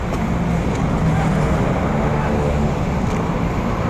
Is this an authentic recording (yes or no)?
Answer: yes